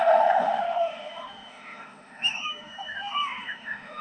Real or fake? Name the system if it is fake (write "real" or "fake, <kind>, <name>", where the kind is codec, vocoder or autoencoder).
fake, autoencoder, DAC-VAE